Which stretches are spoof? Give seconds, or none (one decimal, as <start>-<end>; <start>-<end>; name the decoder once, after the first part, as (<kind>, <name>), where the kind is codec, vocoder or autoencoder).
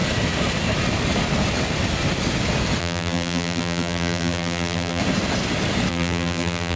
2.8-5.0 (vocoder, BigVGAN v2); 5.9-6.8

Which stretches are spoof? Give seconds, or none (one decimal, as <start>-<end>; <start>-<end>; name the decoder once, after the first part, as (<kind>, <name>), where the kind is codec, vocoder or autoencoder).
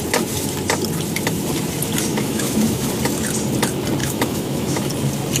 2.1-2.9 (autoencoder, DAC-VAE); 4.0-4.9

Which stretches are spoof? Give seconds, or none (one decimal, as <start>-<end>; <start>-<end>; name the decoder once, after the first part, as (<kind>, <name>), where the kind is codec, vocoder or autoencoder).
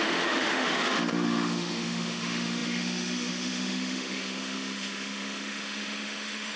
0.0-6.6 (autoencoder, DAC-VAE)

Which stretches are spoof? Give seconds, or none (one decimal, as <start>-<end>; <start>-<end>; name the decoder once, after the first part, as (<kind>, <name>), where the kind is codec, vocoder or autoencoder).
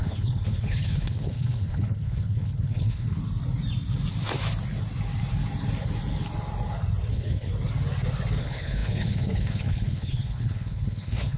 0.0-3.2 (codec, HILCodec); 7.1-7.5; 8.4-11.4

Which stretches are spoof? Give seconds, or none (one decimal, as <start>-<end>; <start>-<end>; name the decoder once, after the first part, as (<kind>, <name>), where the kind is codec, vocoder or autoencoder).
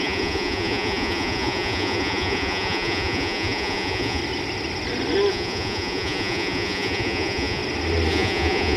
0.0-4.2 (vocoder, Vocos); 5.3-7.6; 8.1-8.8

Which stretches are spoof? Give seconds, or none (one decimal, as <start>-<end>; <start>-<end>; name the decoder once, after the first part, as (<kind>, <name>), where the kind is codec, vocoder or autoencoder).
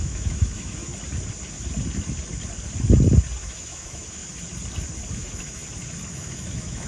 0.0-0.9 (autoencoder, DAC-VAE); 3.4-4.2; 5.1-5.6; 6.1-6.9